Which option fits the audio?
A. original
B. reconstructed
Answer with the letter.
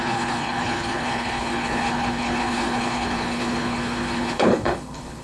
B